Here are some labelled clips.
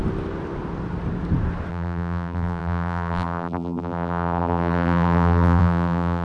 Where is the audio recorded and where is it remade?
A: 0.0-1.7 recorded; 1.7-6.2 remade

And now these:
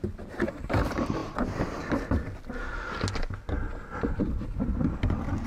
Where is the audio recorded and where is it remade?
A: 0.0-5.5 recorded